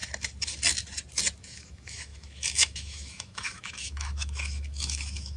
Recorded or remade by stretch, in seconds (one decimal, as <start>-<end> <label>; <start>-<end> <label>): 0.0-1.4 recorded; 1.4-5.4 remade